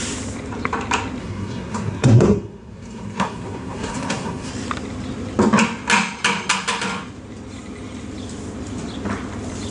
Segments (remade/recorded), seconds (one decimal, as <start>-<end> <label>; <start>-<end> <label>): 0.0-1.2 recorded; 1.2-4.5 remade; 4.5-9.7 recorded